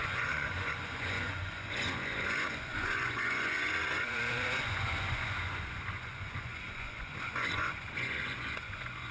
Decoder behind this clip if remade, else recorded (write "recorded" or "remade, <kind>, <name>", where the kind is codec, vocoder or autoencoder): remade, vocoder, Vocos